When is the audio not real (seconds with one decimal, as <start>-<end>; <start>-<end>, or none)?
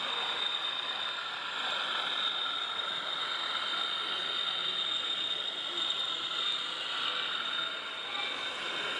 none